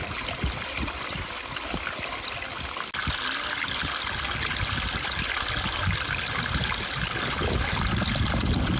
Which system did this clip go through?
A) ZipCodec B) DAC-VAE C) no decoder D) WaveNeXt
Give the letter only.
C